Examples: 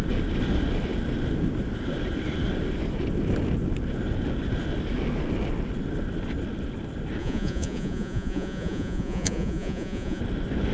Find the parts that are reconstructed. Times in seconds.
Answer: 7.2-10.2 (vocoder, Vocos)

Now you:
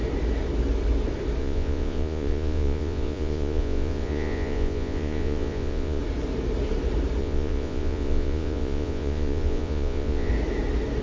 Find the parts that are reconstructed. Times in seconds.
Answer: 1.4-6.0 (vocoder, Vocos); 7.2-10.3

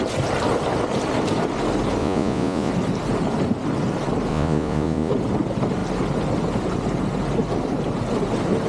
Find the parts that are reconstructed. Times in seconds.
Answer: 2.0-2.7 (vocoder, Vocos); 4.3-5.1